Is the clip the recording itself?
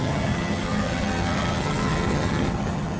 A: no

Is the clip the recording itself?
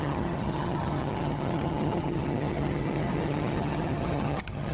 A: no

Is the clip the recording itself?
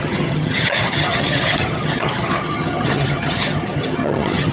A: no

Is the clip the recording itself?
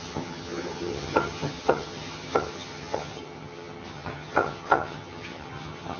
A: no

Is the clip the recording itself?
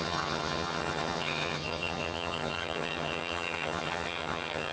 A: no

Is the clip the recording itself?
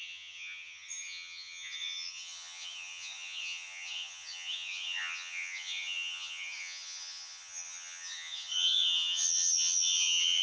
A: no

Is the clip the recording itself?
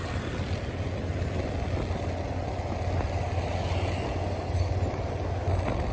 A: yes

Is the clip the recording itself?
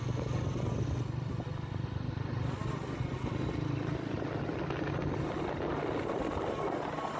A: yes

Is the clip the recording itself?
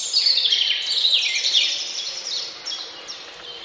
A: yes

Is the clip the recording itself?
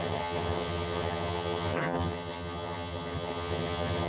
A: no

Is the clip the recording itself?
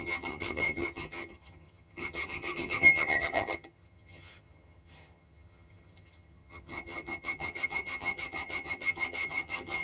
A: no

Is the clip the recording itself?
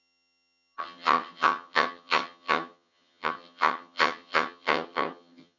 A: no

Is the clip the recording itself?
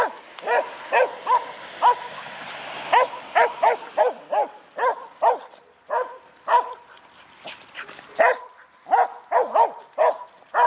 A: yes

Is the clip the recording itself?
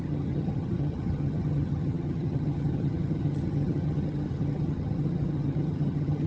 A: no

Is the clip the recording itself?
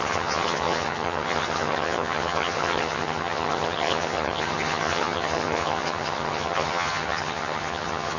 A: no